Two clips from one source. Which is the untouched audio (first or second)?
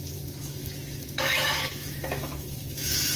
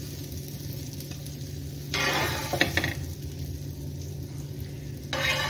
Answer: second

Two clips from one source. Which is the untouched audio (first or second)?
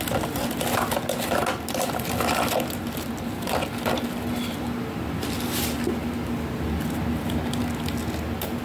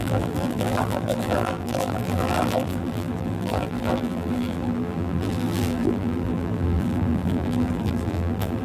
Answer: first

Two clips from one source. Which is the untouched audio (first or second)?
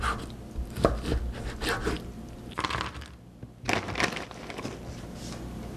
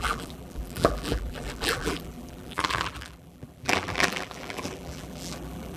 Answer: first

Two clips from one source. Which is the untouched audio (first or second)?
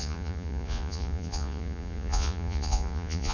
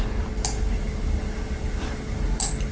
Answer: second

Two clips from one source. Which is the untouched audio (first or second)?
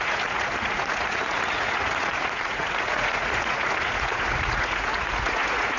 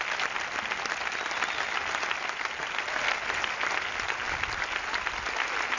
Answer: second